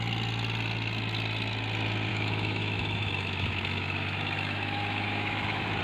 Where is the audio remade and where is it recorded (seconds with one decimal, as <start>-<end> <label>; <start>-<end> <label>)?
0.0-2.1 recorded; 2.1-5.8 remade